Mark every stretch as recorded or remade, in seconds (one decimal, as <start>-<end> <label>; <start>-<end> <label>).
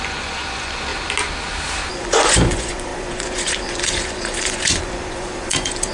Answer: 0.0-0.9 remade; 0.9-1.9 recorded; 1.9-5.9 remade